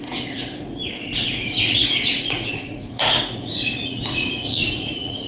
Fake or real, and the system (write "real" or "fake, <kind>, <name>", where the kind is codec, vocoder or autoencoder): fake, vocoder, Vocos